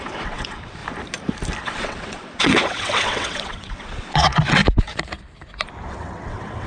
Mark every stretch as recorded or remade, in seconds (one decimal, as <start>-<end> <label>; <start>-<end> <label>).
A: 0.0-0.8 remade; 0.8-1.6 recorded; 1.6-4.6 remade; 4.6-5.9 recorded; 5.9-6.7 remade